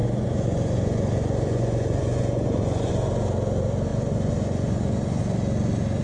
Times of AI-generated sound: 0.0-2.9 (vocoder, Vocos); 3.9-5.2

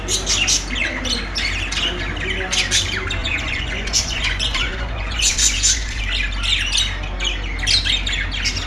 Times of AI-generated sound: 3.2-6.0 (vocoder, Vocos)